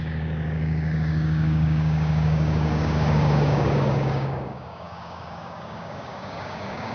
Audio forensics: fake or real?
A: fake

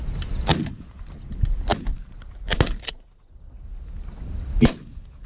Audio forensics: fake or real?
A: real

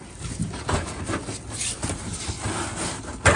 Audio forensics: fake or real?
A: real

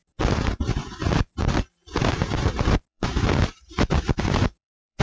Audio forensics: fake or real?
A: fake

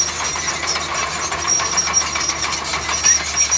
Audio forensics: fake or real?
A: real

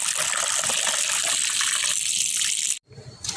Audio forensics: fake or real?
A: real